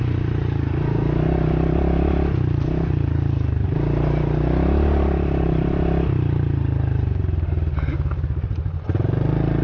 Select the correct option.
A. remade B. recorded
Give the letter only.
B